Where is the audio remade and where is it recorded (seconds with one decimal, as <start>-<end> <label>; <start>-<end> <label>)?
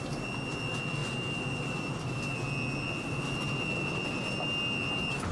0.0-5.3 recorded